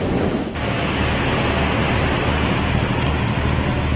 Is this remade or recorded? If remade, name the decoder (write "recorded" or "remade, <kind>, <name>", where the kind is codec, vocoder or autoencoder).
recorded